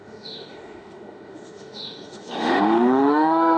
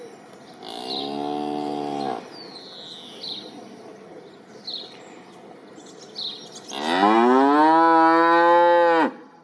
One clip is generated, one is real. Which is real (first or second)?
second